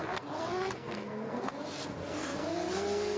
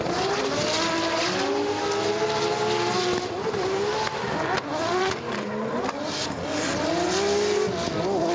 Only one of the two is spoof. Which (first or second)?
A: first